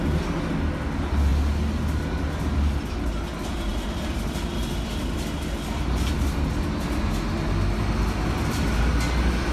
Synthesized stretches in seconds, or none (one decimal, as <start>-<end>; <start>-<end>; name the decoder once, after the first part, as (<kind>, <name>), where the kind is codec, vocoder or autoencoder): none